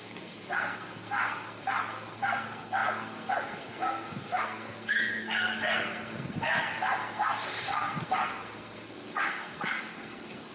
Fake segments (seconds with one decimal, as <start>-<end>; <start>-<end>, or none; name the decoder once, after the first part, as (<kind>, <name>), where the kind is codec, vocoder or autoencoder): 0.0-10.5 (codec, SNAC)

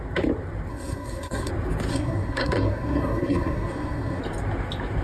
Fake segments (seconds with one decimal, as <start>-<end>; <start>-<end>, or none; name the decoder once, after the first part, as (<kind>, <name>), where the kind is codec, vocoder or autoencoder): 0.7-1.5 (codec, SNAC); 1.9-4.2

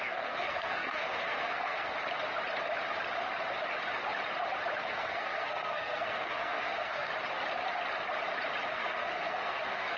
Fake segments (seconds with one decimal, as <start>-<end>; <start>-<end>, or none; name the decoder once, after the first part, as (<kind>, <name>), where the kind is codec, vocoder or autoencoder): 0.0-1.9 (codec, SNAC); 4.9-7.1; 8.7-10.0

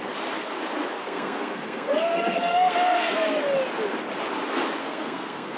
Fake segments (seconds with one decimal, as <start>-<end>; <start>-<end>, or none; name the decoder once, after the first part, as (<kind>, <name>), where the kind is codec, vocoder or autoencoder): 1.0-3.4 (codec, SNAC); 4.8-5.6

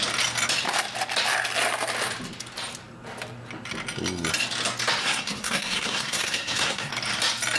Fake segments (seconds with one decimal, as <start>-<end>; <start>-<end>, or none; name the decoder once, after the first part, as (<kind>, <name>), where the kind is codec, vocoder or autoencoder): 5.0-6.9 (codec, SNAC)

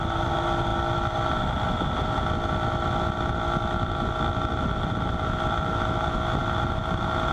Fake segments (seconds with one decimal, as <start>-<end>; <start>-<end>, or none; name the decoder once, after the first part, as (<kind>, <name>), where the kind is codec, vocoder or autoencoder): none